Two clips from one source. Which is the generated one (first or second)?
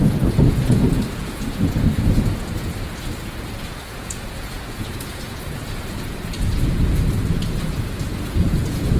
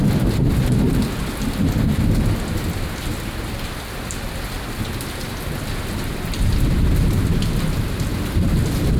first